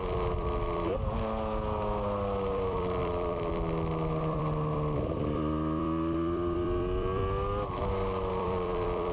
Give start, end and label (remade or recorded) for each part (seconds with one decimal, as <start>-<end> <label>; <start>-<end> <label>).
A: 0.0-0.9 remade; 0.9-2.5 recorded; 2.5-7.2 remade; 7.2-8.3 recorded; 8.3-9.1 remade